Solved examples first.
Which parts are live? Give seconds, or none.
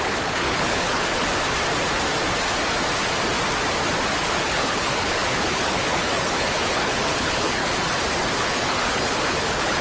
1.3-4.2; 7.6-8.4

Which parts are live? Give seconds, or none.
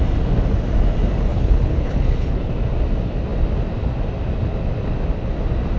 0.0-1.3; 2.5-5.8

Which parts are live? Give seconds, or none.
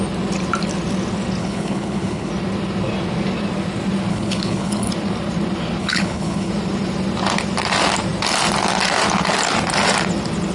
0.0-1.4; 2.3-4.1; 4.9-5.8; 6.5-10.5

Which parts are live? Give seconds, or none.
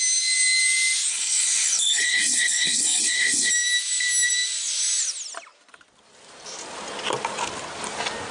0.0-1.1; 3.5-8.3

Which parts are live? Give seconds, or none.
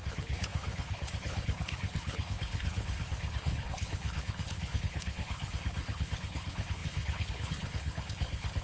none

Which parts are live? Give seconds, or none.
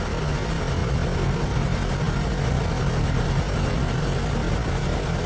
0.0-5.3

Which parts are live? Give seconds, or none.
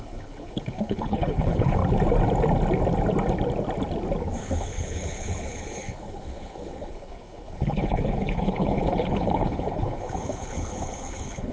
1.8-4.4